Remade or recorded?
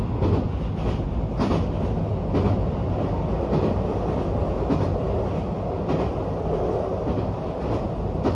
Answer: recorded